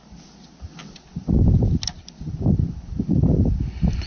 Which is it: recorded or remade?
recorded